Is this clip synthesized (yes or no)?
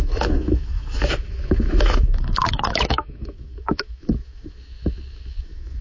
yes